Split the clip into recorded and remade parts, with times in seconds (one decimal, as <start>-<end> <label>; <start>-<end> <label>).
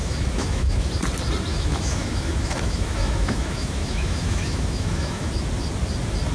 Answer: 0.0-0.9 remade; 0.9-1.5 recorded; 1.5-5.3 remade; 5.3-6.3 recorded